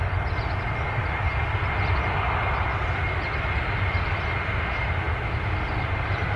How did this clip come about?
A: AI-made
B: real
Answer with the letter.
B